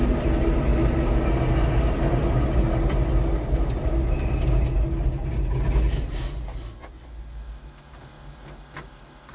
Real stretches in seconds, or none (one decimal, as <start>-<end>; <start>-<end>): 0.0-9.3